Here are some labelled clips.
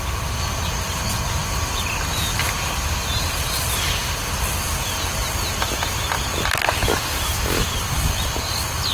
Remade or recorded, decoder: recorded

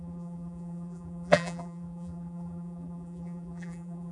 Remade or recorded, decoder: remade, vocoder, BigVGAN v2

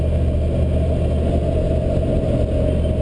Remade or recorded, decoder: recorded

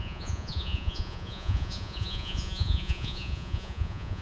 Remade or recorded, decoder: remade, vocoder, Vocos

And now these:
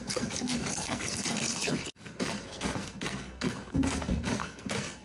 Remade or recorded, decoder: remade, codec, SNAC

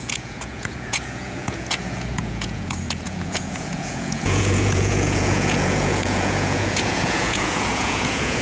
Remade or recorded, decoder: remade, vocoder, Vocos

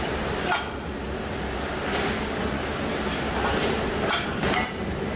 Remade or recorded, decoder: recorded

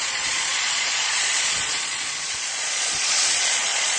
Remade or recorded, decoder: remade, vocoder, Vocos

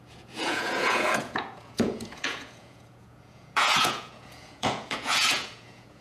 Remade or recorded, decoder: remade, vocoder, Vocos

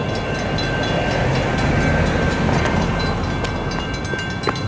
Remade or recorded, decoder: recorded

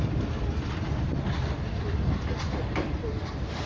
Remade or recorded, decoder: recorded